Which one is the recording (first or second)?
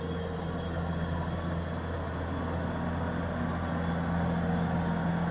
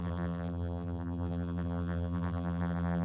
first